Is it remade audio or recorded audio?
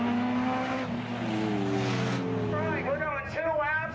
recorded